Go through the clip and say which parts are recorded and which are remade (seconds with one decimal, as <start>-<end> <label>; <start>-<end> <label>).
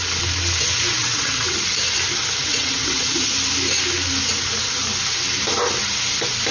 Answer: 0.0-1.0 recorded; 1.0-1.6 remade; 1.6-2.4 recorded; 2.4-3.3 remade; 3.3-6.5 recorded